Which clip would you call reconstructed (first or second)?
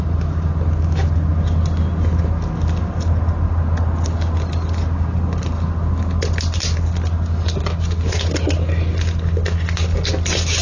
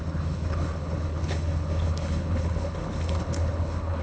second